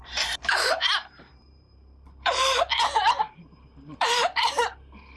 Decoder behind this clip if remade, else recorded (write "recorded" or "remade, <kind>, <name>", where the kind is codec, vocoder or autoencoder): remade, vocoder, BigVGAN v2